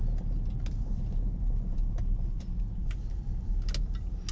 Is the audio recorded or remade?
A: recorded